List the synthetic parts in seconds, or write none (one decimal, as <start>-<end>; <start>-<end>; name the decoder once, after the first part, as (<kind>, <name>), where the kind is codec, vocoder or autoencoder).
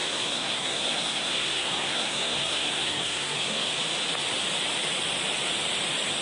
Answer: 0.0-3.7 (codec, SNAC)